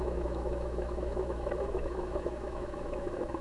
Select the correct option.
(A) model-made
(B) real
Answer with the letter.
A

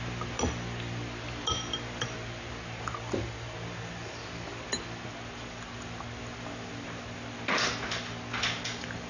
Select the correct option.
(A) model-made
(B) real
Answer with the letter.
B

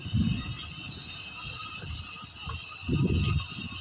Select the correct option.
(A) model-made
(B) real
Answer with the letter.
B